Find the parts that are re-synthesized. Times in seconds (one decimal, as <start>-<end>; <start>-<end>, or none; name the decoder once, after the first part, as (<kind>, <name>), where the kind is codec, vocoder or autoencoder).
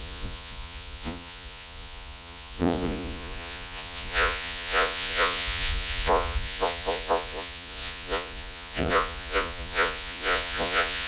0.0-11.1 (vocoder, Vocos)